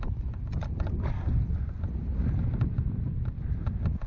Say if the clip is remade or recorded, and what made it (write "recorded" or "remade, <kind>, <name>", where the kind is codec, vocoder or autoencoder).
recorded